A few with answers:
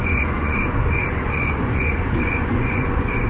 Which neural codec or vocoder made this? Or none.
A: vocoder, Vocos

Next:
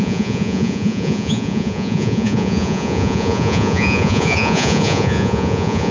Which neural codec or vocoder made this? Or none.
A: vocoder, Vocos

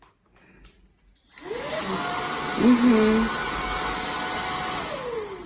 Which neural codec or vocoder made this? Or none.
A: none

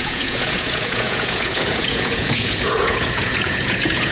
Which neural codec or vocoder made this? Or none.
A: vocoder, Vocos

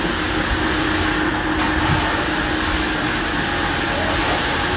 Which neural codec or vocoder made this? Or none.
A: none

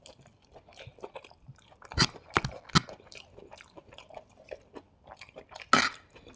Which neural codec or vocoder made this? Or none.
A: none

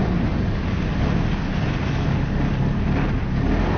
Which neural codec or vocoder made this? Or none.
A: none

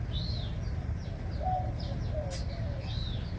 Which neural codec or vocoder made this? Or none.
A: none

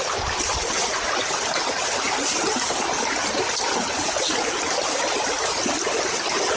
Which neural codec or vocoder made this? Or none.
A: none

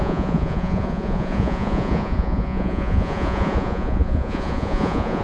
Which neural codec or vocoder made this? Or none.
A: vocoder, Vocos